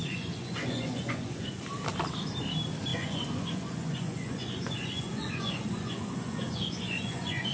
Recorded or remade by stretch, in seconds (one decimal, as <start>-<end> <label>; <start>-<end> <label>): 0.0-1.6 remade; 1.6-2.9 recorded; 2.9-7.5 remade